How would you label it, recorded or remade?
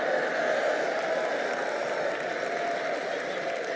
recorded